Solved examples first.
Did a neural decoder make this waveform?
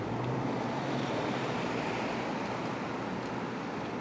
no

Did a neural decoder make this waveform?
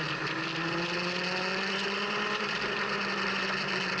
yes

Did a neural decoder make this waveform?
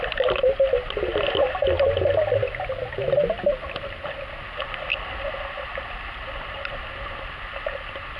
no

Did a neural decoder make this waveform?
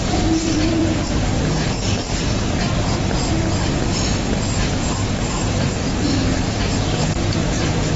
yes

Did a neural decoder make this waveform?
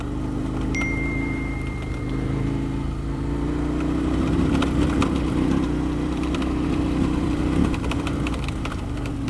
yes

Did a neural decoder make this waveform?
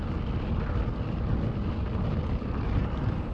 no